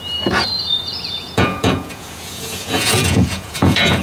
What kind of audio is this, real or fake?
fake